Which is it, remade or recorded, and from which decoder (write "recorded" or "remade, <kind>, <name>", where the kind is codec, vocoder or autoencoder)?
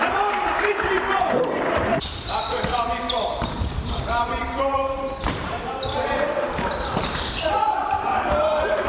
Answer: remade, vocoder, BigVGAN v2